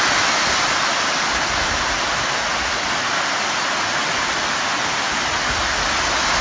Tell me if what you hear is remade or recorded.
recorded